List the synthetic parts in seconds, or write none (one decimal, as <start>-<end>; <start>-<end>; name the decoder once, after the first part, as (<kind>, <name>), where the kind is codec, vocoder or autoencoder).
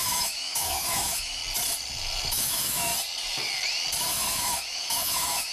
0.0-1.4 (autoencoder, DAC-VAE); 2.3-2.9; 4.0-5.5